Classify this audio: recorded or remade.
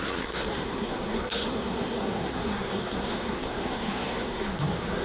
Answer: remade